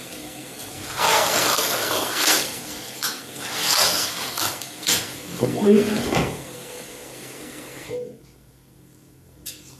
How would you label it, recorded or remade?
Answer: remade